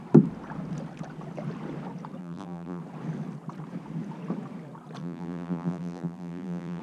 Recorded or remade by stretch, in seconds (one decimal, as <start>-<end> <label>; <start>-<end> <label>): 0.0-2.2 recorded; 2.2-2.8 remade; 2.8-5.0 recorded; 5.0-6.8 remade